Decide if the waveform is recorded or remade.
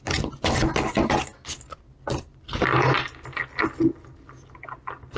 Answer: recorded